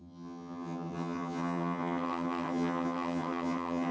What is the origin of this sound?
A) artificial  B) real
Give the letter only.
A